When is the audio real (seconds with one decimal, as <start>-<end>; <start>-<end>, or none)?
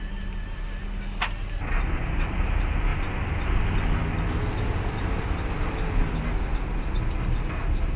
0.0-8.0